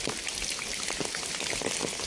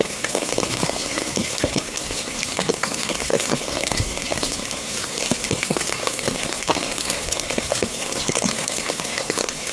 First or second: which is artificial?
second